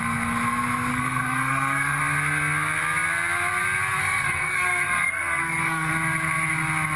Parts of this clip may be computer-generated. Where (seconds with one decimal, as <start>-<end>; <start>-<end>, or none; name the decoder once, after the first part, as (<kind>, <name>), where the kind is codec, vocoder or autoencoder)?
0.9-2.0 (codec, SNAC); 4.0-5.9

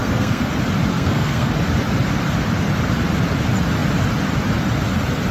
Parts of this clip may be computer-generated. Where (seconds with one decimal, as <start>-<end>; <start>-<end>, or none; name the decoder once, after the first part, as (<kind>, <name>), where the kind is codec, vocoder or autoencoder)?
0.0-0.5 (codec, SNAC); 0.9-1.5

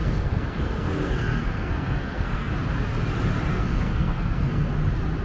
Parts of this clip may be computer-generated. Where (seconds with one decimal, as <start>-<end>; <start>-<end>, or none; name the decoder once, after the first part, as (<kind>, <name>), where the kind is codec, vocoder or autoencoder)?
0.0-2.5 (codec, SNAC); 3.5-4.7

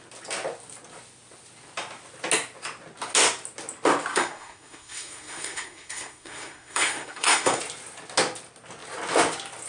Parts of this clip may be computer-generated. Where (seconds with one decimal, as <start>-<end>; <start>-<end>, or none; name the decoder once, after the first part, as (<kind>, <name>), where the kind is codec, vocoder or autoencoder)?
4.1-7.6 (codec, SNAC)

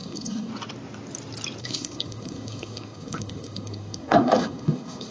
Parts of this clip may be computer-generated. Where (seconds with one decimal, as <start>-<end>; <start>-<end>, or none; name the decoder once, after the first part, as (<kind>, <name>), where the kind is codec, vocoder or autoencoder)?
0.0-0.5 (codec, SNAC); 1.6-5.1

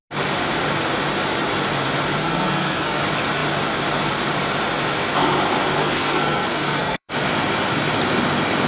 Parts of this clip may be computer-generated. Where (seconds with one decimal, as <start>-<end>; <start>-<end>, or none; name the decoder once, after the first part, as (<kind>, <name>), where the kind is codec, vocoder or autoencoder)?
2.2-3.0 (codec, SNAC); 5.8-7.1

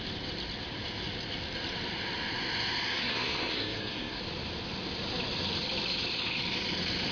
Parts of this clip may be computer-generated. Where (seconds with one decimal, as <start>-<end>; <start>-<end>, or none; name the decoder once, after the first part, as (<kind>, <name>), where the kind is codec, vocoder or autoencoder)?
3.0-4.2 (codec, SNAC)

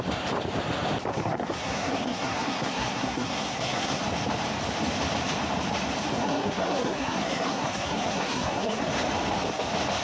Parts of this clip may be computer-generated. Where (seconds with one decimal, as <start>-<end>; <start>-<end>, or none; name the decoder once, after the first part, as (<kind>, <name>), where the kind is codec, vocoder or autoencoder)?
1.1-4.0 (codec, SNAC); 6.1-8.8